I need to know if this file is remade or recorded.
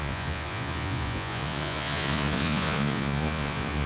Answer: remade